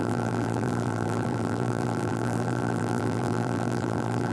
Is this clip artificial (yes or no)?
yes